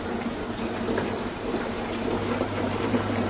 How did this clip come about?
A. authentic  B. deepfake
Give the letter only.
B